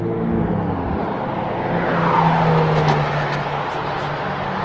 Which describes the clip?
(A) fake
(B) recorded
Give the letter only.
B